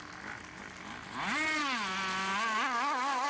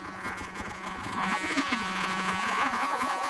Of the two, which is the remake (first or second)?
second